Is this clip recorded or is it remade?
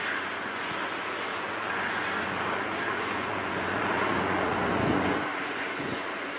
remade